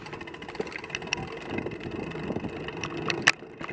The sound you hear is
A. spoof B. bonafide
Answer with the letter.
B